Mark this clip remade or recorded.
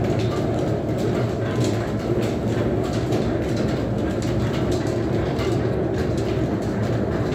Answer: recorded